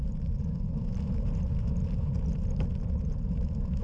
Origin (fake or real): real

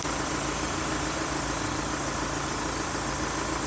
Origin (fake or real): fake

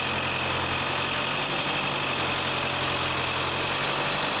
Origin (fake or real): real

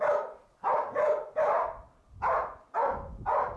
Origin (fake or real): real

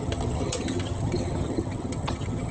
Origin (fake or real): fake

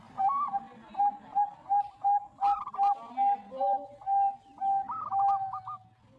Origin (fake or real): real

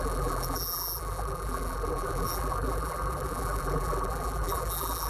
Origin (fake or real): fake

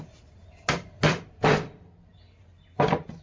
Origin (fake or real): real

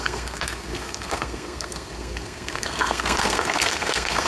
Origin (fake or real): fake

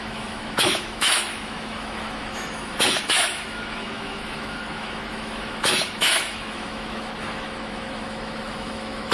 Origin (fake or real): fake